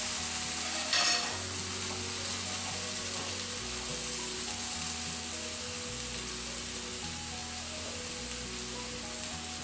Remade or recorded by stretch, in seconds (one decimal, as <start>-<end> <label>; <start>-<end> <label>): 0.0-9.6 recorded